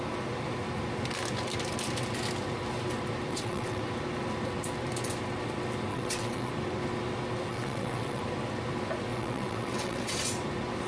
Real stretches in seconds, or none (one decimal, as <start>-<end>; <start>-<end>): 0.0-3.3; 3.8-5.9; 6.5-7.5; 8.2-9.1; 10.1-10.9